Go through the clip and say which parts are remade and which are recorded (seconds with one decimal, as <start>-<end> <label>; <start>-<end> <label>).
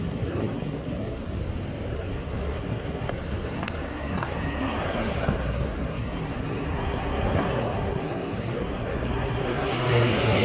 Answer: 0.0-1.4 remade; 1.4-1.9 recorded; 1.9-10.4 remade